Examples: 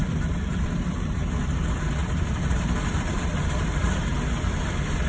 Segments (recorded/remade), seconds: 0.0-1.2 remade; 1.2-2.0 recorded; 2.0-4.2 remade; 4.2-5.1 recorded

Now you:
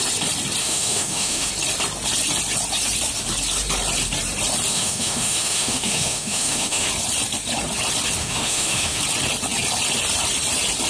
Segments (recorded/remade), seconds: 0.0-0.6 recorded; 0.6-1.5 remade; 1.5-4.7 recorded; 4.7-6.9 remade; 6.9-8.2 recorded; 8.2-9.0 remade; 9.0-10.9 recorded

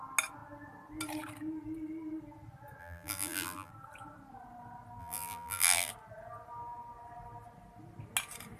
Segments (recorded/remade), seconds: 0.0-2.8 recorded; 2.8-3.7 remade; 3.7-5.0 recorded; 5.0-5.9 remade; 5.9-8.6 recorded